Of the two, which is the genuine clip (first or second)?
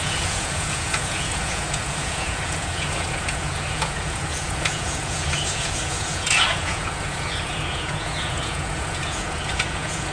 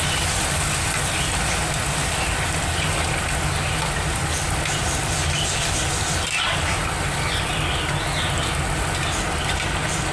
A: second